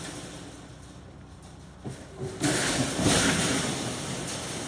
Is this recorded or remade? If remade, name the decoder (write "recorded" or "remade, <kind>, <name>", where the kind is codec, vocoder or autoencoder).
recorded